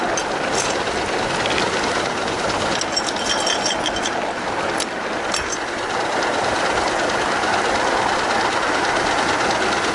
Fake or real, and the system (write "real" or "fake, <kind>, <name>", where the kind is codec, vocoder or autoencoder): real